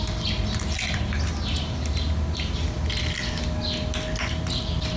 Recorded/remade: recorded